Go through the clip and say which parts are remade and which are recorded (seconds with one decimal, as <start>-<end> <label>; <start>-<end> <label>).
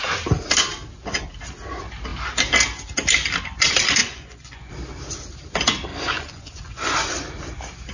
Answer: 0.0-4.0 recorded; 4.0-4.7 remade; 4.7-5.9 recorded; 5.9-7.1 remade; 7.1-7.9 recorded